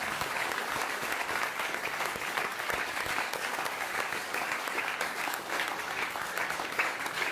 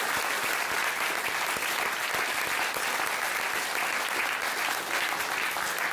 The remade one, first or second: first